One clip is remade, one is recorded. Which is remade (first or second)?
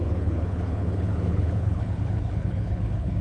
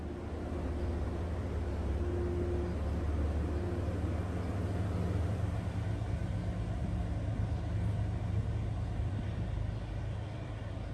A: first